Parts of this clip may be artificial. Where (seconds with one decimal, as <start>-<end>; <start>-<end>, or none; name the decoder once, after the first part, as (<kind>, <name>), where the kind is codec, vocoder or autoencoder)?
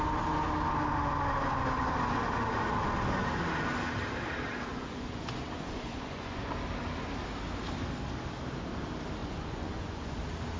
4.7-6.5 (vocoder, Vocos); 9.2-10.2